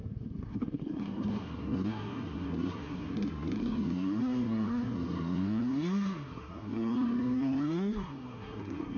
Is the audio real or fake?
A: fake